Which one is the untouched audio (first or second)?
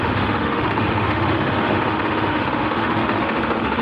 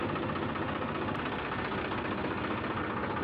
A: second